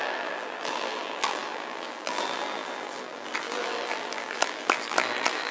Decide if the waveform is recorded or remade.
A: remade